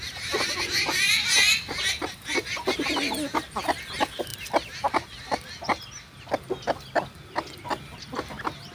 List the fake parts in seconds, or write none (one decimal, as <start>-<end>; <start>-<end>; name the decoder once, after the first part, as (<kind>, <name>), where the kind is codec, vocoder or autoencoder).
none